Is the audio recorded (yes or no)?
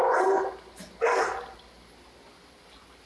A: yes